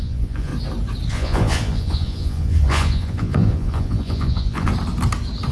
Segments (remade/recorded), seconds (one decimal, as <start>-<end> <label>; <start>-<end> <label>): 0.0-0.5 remade; 0.5-1.1 recorded; 1.1-4.7 remade; 4.7-5.5 recorded